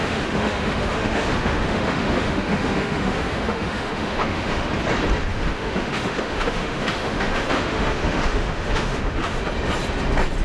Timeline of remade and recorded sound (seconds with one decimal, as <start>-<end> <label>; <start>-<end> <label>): 0.0-4.7 remade; 4.7-5.3 recorded; 5.3-9.4 remade; 9.4-10.4 recorded